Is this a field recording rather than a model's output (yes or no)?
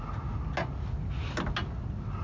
yes